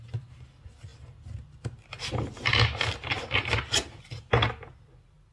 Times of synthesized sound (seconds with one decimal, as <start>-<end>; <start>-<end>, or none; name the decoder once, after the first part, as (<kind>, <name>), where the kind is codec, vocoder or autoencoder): none